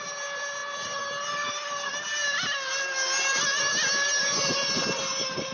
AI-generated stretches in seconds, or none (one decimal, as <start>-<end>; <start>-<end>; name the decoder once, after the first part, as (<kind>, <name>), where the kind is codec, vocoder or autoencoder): none